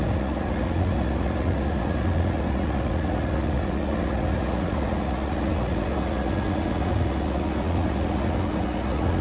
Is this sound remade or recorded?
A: remade